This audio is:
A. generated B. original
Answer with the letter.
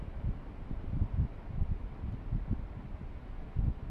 B